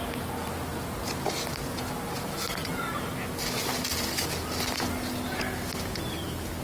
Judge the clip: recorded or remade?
recorded